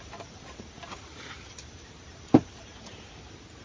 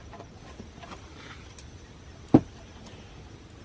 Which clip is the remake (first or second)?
first